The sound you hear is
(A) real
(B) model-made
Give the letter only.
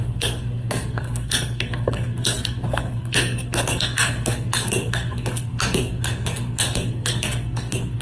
B